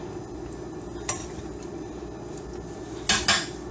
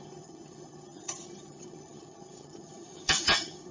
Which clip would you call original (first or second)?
first